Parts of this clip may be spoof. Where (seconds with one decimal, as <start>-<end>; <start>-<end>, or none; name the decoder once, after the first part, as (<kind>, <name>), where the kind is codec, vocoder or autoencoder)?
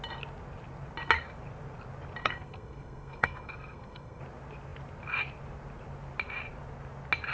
2.2-4.2 (codec, SNAC)